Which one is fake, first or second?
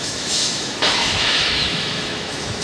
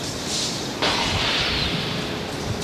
first